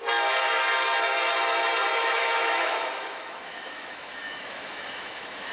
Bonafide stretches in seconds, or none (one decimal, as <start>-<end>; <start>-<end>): 0.0-1.9